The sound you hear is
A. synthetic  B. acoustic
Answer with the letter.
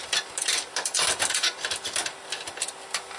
B